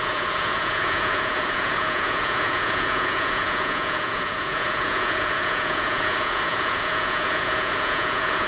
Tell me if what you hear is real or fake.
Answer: fake